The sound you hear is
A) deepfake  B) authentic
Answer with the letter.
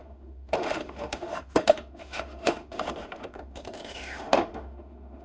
A